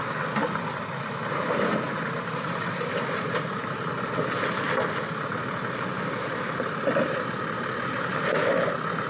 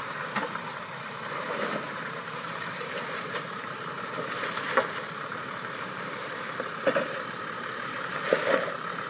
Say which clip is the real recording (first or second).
first